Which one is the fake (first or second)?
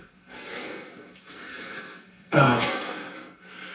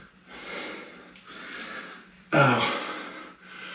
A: first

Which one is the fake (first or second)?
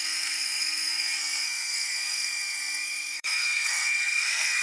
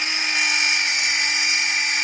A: first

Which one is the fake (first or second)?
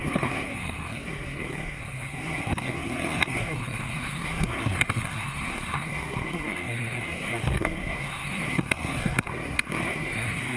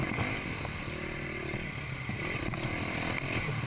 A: first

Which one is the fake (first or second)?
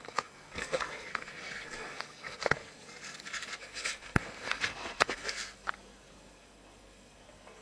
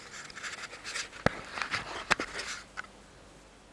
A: first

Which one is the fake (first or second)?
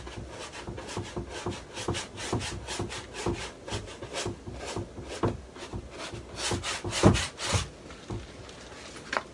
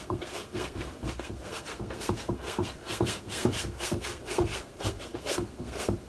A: second